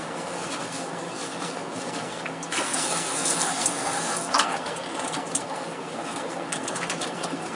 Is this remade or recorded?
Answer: remade